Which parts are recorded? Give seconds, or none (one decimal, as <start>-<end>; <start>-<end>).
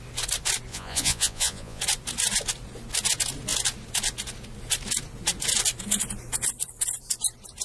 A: 0.0-0.7; 1.8-7.6